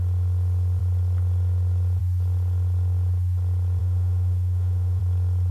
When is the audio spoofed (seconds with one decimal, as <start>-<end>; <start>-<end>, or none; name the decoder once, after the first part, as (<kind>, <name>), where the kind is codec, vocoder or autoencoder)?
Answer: 3.8-5.0 (autoencoder, DAC-VAE)